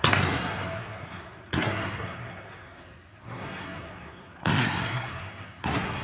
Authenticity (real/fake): fake